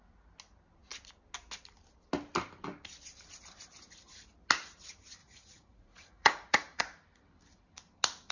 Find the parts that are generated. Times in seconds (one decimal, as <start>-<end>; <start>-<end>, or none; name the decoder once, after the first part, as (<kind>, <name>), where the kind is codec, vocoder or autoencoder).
5.2-6.8 (vocoder, Vocos)